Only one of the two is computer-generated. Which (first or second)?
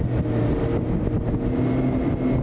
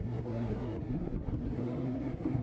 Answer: second